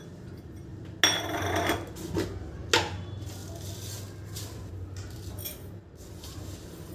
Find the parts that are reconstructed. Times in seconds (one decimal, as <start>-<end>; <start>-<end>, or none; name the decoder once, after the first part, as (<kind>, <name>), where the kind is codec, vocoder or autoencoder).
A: none